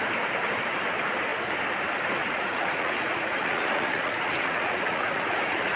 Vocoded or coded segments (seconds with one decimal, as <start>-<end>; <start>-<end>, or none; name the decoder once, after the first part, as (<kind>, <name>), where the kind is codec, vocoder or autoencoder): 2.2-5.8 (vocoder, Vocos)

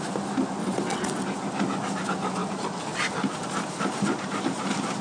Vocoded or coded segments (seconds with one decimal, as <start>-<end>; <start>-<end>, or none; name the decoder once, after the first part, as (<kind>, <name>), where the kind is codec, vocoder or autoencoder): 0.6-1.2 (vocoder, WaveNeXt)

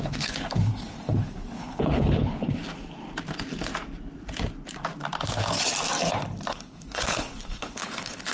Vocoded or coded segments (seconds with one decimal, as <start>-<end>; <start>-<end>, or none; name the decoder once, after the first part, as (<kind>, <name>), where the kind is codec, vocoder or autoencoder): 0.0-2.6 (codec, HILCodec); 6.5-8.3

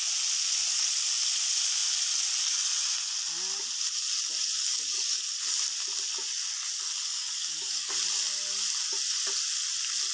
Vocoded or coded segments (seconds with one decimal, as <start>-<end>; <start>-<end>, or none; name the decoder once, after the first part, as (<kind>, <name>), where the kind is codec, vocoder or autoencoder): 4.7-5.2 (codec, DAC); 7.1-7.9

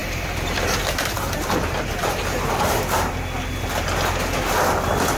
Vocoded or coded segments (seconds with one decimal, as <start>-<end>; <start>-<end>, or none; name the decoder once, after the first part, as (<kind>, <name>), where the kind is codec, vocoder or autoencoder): 0.0-3.1 (vocoder, BigVGAN v2)